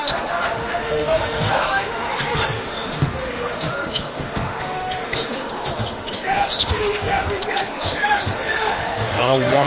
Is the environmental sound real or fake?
fake